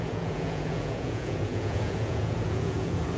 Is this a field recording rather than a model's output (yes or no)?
no